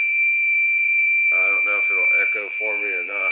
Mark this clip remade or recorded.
remade